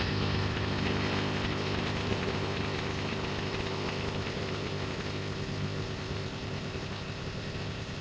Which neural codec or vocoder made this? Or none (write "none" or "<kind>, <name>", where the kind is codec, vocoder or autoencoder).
codec, ZipCodec